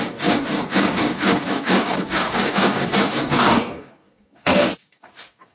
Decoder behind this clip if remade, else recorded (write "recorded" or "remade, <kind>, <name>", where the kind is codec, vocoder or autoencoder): remade, codec, DAC